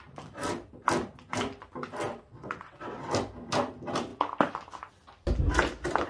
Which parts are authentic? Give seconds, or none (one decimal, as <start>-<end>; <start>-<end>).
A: 0.0-2.3; 3.1-6.1